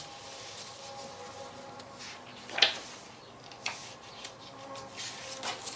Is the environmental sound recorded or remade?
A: recorded